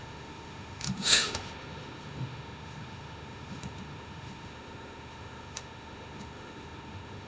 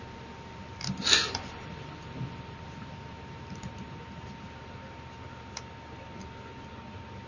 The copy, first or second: first